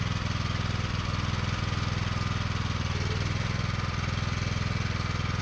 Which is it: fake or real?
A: real